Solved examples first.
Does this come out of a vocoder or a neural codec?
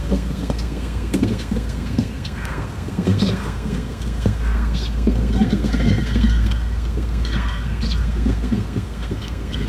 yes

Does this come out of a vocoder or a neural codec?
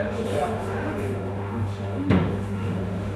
yes